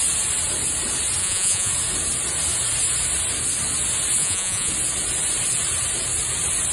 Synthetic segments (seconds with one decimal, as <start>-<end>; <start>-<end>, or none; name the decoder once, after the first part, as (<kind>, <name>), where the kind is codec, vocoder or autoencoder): 1.2-1.7 (vocoder, Vocos); 4.2-4.7